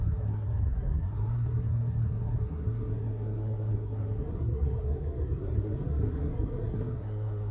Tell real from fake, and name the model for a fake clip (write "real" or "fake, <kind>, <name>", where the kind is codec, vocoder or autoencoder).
fake, codec, SNAC